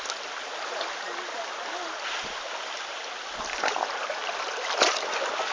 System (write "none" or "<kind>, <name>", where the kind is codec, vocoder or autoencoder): none